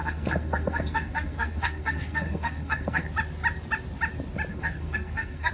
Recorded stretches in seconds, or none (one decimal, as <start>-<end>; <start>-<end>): 3.1-4.5